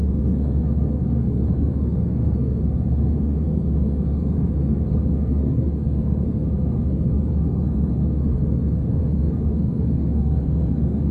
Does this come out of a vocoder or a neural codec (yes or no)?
yes